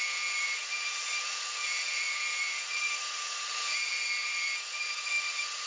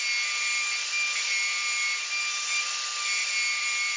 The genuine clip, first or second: second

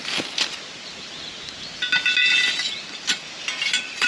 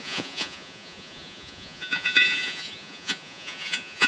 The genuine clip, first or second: first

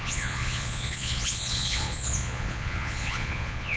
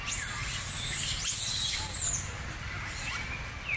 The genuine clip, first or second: second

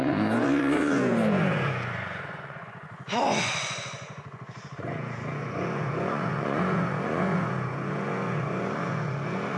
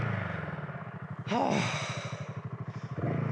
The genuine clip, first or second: second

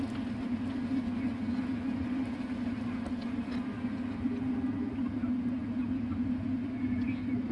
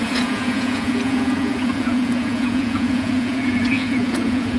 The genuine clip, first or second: first